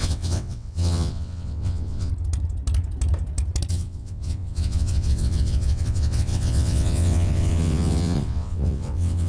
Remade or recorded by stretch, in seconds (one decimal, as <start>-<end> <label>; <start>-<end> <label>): 0.0-2.1 remade; 2.1-3.7 recorded; 3.7-9.3 remade